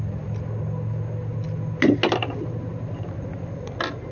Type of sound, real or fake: real